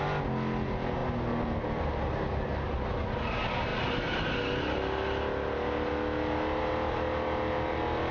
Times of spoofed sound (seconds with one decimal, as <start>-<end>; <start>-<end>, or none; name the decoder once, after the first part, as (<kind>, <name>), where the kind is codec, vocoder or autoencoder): none

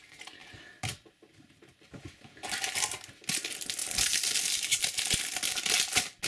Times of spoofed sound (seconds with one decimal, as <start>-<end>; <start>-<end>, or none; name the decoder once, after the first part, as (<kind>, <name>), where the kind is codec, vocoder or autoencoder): 0.4-2.0 (vocoder, BigVGAN v2); 3.8-4.8

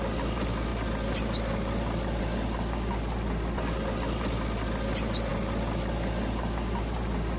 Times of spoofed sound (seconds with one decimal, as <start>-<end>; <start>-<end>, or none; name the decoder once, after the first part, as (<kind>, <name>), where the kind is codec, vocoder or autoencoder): none

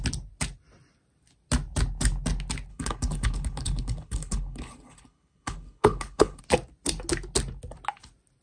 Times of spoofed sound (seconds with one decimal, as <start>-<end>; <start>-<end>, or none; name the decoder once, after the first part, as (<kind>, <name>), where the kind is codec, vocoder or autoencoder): 2.7-6.4 (codec, HILCodec)

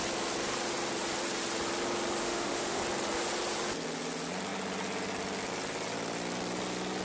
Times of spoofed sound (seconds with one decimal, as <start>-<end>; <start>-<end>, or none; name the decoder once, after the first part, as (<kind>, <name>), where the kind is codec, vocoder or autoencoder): 2.2-2.8 (autoencoder, DAC-VAE)

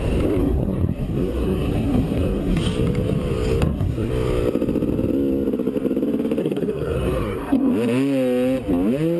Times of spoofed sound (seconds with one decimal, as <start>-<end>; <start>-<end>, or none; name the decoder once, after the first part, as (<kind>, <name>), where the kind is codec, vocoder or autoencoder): 0.4-2.6 (codec, SNAC); 3.6-4.1; 6.4-7.7